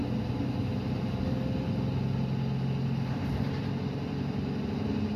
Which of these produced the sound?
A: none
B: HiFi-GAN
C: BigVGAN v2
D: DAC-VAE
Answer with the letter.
A